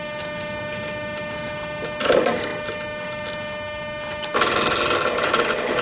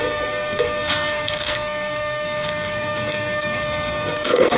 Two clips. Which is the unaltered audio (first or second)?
first